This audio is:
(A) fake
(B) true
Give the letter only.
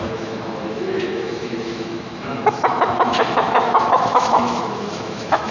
A